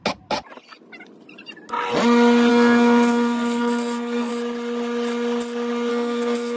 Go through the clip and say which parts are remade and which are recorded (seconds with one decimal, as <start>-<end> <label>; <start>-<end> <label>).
0.0-2.5 recorded; 2.5-4.3 remade; 4.3-5.9 recorded; 5.9-6.6 remade

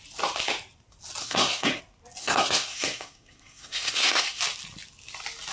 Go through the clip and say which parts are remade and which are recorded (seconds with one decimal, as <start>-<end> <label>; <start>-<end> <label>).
0.0-1.2 recorded; 1.2-1.8 remade; 1.8-2.2 recorded; 2.2-4.4 remade; 4.4-5.5 recorded

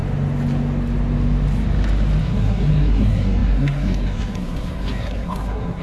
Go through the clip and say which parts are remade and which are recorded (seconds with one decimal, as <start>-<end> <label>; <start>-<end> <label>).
0.0-2.2 recorded; 2.2-5.8 remade

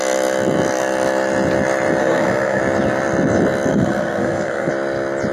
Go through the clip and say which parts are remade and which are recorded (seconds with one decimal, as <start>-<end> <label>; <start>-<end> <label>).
0.0-2.0 recorded; 2.0-2.6 remade; 2.6-3.7 recorded; 3.7-4.7 remade; 4.7-5.3 recorded